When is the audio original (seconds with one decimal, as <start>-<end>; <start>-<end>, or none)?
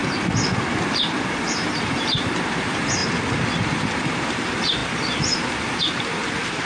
0.0-0.9; 3.0-3.7; 4.8-5.8